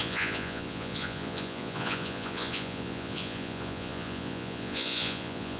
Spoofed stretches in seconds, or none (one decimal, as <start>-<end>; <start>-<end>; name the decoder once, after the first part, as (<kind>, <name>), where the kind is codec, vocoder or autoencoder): 0.0-5.6 (vocoder, Vocos)